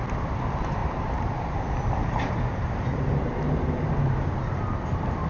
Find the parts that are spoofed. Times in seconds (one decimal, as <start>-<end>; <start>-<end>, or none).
0.8-3.9